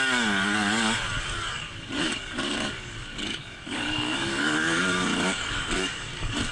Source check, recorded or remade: remade